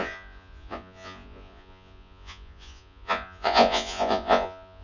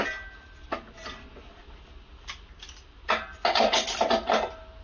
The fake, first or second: first